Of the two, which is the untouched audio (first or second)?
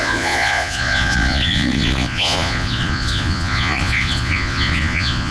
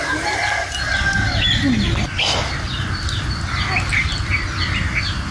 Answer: second